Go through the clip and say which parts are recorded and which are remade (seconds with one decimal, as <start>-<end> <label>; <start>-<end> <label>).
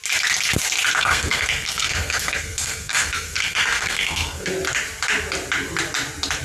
0.0-1.0 recorded; 1.0-4.5 remade; 4.5-6.4 recorded